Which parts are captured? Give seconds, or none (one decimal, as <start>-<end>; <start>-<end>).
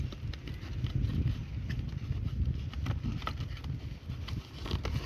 0.0-5.1